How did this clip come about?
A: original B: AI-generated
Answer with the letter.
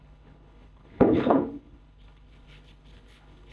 B